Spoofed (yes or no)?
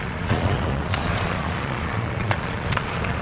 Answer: yes